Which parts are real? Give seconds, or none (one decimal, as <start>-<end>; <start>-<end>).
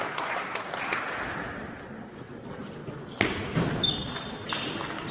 0.0-5.1